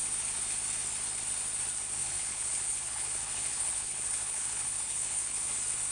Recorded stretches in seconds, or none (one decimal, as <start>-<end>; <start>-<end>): 0.0-2.0; 5.5-5.9